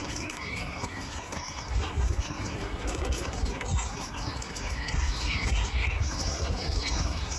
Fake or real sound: fake